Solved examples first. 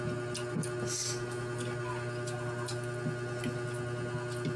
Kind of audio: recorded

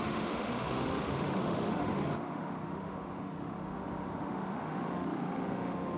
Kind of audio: remade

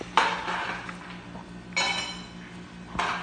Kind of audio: recorded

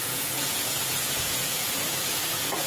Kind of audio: remade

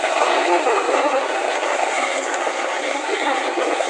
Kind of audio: remade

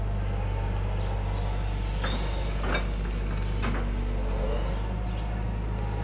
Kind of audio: recorded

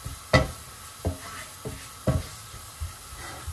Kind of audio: recorded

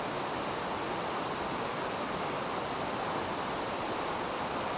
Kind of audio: recorded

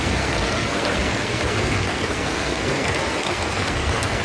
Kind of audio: remade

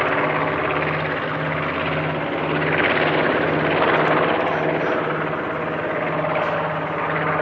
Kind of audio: recorded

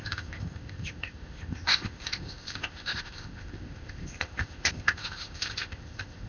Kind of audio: remade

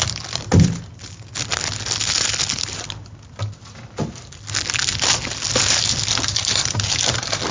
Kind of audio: recorded